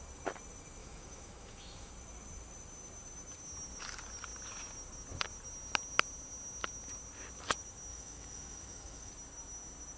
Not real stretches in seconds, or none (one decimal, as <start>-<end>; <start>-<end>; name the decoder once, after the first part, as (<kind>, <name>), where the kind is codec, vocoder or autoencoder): 0.8-1.9 (autoencoder, DAC-VAE); 7.9-9.1